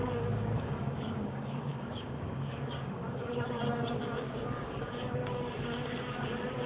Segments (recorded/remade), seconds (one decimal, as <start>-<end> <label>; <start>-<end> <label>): 0.0-5.2 remade; 5.2-6.7 recorded